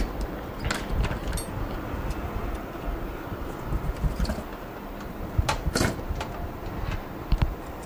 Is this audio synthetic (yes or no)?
no